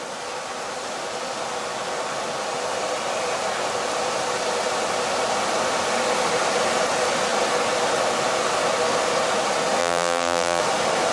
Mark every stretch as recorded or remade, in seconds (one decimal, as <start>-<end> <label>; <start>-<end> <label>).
0.0-9.8 recorded; 9.8-10.6 remade; 10.6-11.1 recorded